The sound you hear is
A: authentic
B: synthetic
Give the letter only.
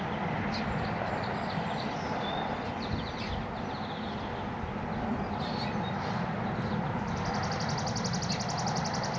A